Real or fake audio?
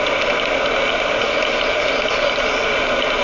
real